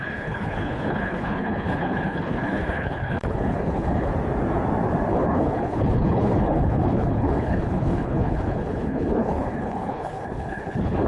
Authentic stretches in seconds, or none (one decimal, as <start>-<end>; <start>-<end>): 4.1-5.1